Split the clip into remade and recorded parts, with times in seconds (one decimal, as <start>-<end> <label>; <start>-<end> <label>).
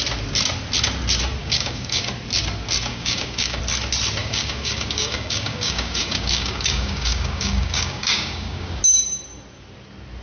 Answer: 0.0-1.4 recorded; 1.4-2.1 remade; 2.1-2.9 recorded; 2.9-3.6 remade; 3.6-4.2 recorded; 4.2-8.8 remade; 8.8-10.2 recorded